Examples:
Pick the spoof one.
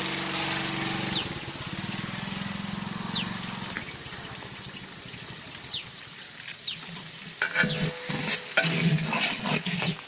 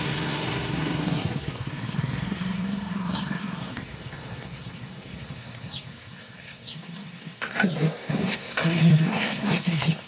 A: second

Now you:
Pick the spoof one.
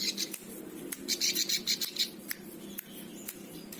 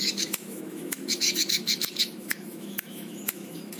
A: second